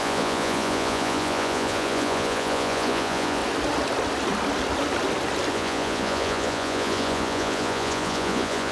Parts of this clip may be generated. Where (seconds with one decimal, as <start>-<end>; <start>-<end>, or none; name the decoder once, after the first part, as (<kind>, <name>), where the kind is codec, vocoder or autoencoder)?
0.0-3.4 (vocoder, Vocos); 5.5-8.7